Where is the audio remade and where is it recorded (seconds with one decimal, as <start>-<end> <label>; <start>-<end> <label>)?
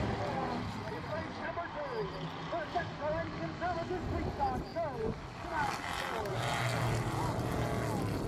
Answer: 0.0-8.3 recorded